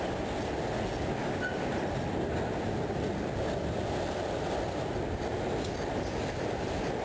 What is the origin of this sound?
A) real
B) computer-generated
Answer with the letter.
A